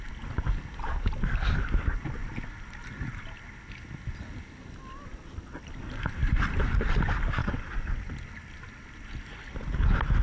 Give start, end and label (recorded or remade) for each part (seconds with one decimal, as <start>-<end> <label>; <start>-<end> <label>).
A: 0.0-7.4 recorded; 7.4-8.1 remade; 8.1-10.2 recorded